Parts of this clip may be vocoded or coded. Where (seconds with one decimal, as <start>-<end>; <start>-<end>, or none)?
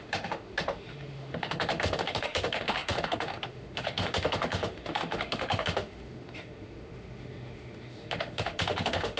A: 0.0-9.2